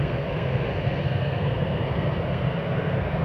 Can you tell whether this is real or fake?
fake